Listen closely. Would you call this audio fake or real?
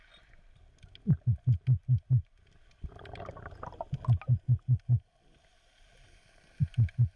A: real